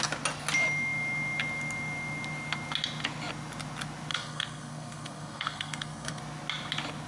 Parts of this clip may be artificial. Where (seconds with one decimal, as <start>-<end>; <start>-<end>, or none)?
4.1-6.2